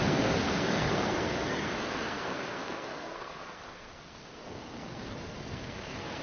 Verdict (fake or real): fake